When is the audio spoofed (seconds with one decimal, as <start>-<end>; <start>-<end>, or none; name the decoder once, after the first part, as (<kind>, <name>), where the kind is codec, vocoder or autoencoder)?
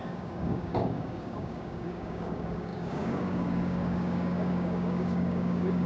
0.0-5.9 (codec, DAC)